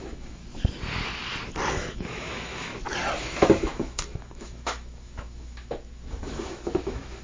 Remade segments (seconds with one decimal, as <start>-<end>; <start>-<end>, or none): 0.0-0.4; 1.7-2.7; 3.2-7.2